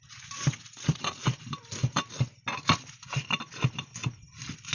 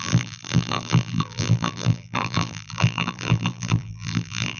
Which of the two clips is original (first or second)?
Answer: first